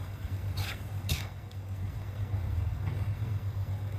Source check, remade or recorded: remade